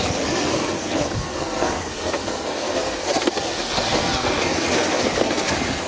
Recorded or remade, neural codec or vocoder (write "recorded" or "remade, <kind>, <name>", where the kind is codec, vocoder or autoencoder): remade, codec, SNAC